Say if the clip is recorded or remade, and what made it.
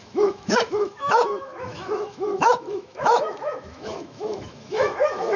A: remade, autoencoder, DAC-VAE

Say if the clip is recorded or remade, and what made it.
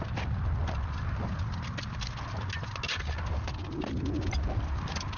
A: recorded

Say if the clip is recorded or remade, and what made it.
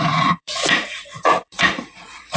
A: remade, vocoder, Vocos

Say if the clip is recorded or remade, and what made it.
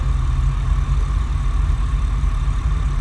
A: remade, vocoder, BigVGAN v2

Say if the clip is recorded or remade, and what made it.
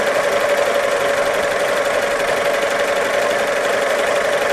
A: recorded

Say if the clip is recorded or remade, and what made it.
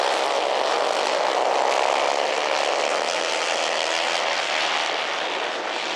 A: recorded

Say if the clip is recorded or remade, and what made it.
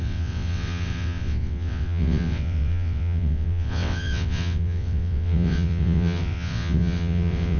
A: remade, vocoder, WaveNeXt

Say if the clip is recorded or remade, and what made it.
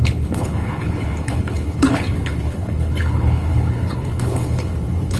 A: remade, codec, HILCodec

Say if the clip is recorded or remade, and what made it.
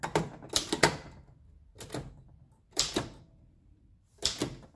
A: recorded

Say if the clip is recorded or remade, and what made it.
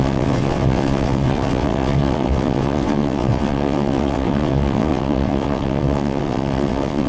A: remade, vocoder, WaveNeXt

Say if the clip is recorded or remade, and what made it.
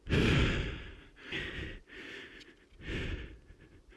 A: recorded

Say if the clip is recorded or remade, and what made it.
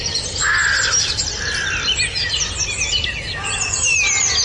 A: recorded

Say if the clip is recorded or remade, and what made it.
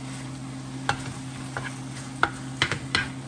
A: recorded